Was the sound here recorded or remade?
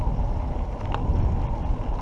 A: recorded